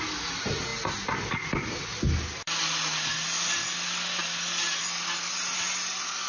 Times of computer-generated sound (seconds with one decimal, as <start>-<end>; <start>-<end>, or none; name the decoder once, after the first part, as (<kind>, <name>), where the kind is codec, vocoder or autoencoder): none